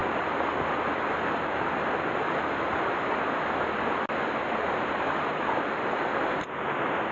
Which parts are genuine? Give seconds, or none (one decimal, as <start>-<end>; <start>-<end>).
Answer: 0.0-7.1